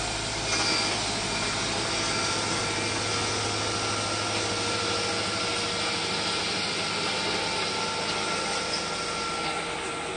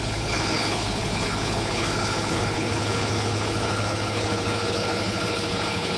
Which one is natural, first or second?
first